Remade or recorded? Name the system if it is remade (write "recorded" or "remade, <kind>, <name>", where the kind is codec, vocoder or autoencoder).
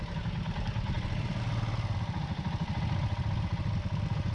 recorded